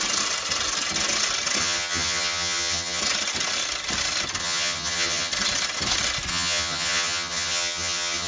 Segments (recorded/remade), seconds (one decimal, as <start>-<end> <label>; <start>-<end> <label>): 0.0-1.6 recorded; 1.6-3.0 remade; 3.0-4.4 recorded; 4.4-5.3 remade; 5.3-6.3 recorded; 6.3-8.3 remade